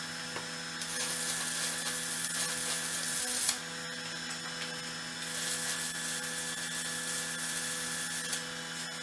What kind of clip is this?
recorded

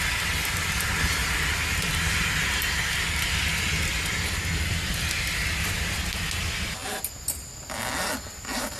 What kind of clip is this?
recorded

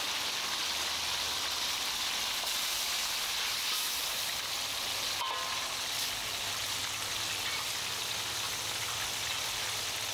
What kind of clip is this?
recorded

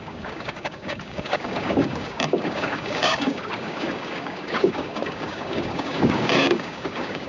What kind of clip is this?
remade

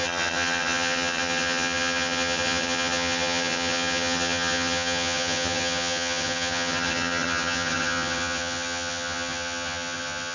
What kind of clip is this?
remade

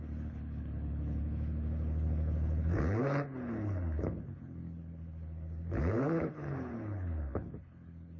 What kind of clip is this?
remade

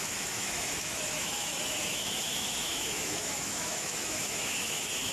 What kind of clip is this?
remade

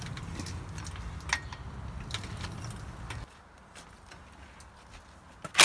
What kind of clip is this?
recorded